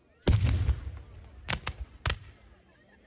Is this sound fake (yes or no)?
no